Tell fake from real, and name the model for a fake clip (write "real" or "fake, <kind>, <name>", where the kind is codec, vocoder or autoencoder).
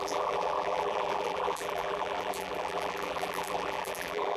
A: fake, vocoder, BigVGAN v2